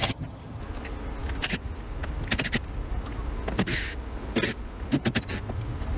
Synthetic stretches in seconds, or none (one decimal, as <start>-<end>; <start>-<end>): 0.0-0.6